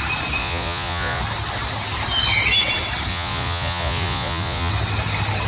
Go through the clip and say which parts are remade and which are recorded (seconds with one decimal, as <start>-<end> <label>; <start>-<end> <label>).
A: 0.0-0.4 recorded; 0.4-1.2 remade; 1.2-3.1 recorded; 3.1-4.7 remade; 4.7-5.5 recorded